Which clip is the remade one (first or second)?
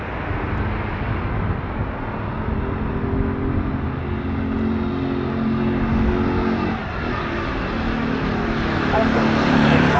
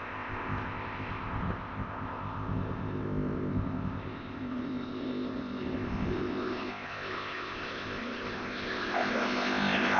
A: second